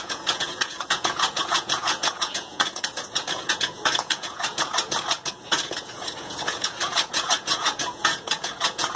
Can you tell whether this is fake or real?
fake